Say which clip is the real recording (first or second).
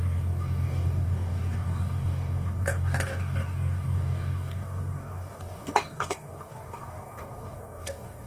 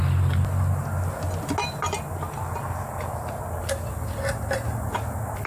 second